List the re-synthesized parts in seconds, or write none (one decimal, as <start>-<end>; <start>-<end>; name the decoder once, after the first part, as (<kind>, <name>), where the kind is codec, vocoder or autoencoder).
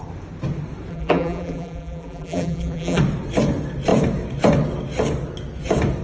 0.9-3.0 (vocoder, BigVGAN v2)